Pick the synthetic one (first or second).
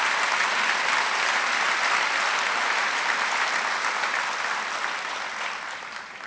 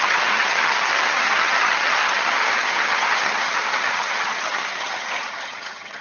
second